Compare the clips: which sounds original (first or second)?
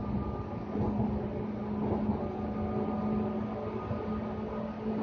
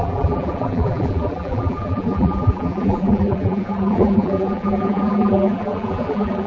first